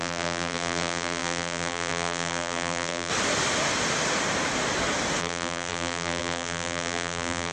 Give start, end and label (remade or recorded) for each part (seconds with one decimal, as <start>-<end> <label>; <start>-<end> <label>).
0.0-3.1 remade; 3.1-5.2 recorded; 5.2-7.5 remade

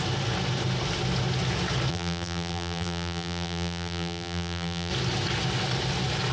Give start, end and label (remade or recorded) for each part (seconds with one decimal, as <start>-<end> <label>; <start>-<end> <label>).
0.0-1.9 recorded; 1.9-4.9 remade; 4.9-6.3 recorded

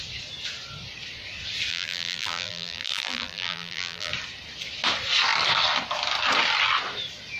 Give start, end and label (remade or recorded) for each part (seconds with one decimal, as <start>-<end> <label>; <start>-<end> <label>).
0.0-1.7 recorded; 1.7-4.1 remade; 4.1-7.4 recorded

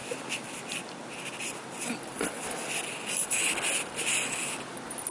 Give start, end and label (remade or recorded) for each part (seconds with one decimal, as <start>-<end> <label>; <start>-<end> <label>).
0.0-5.1 recorded

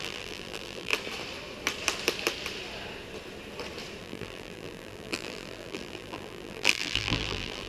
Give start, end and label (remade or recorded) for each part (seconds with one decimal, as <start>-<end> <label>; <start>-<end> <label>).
0.0-0.9 remade; 0.9-4.0 recorded; 4.0-7.7 remade

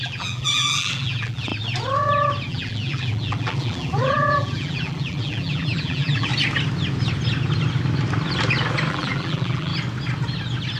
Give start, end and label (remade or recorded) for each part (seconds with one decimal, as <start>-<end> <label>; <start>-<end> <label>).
0.0-1.5 remade; 1.5-2.5 recorded; 2.5-6.3 remade; 6.3-8.9 recorded; 8.9-9.7 remade; 9.7-10.8 recorded

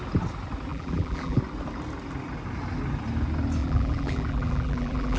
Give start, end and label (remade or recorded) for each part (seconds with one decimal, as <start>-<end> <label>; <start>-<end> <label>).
0.0-0.7 recorded; 0.7-1.4 remade; 1.4-3.6 recorded; 3.6-5.2 remade